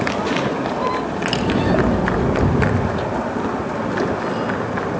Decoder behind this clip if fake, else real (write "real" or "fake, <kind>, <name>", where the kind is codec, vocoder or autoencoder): real